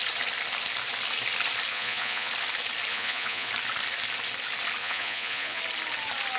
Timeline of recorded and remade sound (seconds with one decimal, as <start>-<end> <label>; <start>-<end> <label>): 0.0-1.7 recorded; 1.7-2.3 remade; 2.3-2.9 recorded; 2.9-3.5 remade; 3.5-4.8 recorded; 4.8-5.6 remade; 5.6-6.4 recorded

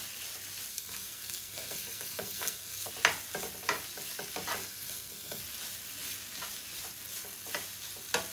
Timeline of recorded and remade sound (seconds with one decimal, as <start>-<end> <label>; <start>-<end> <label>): 0.0-0.7 recorded; 0.7-2.9 remade; 2.9-4.6 recorded; 4.6-5.4 remade; 5.4-8.3 recorded

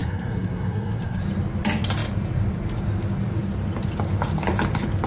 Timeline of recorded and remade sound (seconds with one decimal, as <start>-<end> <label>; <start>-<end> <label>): 0.0-1.2 remade; 1.2-5.1 recorded

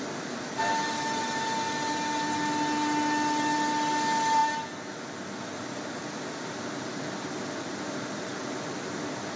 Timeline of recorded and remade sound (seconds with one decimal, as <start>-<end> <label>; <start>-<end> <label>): 0.0-9.4 recorded

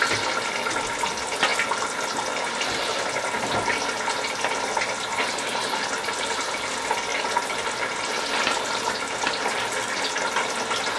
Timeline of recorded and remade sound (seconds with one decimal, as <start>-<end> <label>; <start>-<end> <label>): 0.0-11.0 recorded

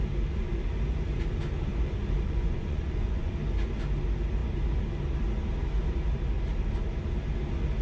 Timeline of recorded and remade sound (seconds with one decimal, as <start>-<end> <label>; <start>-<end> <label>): 0.0-1.7 recorded; 1.7-3.3 remade; 3.3-7.8 recorded